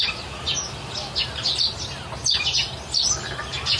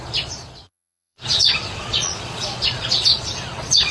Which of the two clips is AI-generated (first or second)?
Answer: second